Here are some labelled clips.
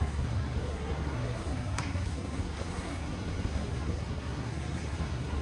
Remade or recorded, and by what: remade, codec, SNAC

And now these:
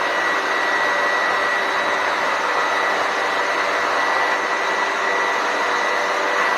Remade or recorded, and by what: recorded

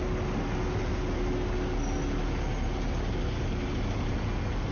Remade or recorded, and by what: recorded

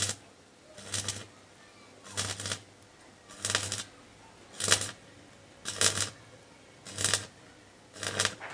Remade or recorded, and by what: recorded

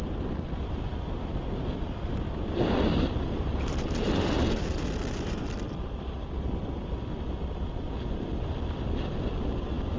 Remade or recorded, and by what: recorded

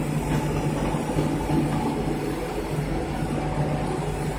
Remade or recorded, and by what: recorded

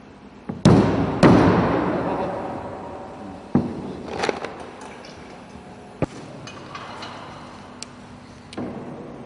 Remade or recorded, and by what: recorded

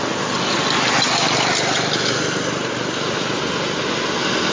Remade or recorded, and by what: recorded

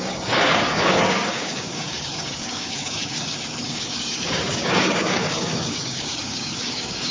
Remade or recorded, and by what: remade, codec, DAC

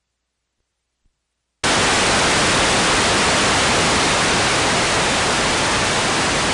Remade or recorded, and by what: recorded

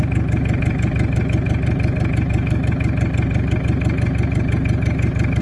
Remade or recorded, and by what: recorded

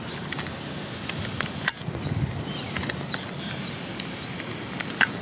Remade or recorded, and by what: recorded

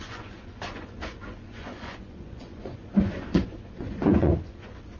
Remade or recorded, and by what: remade, vocoder, Vocos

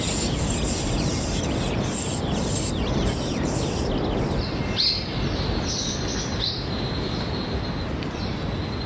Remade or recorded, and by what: recorded